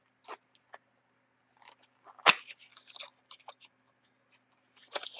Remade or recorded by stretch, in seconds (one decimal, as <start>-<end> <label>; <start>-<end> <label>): 0.0-5.2 recorded